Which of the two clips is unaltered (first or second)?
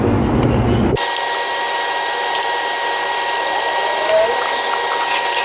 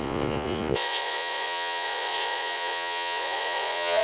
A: first